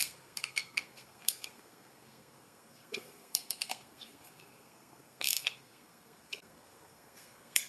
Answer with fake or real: fake